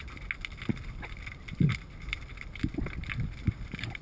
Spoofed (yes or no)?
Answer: no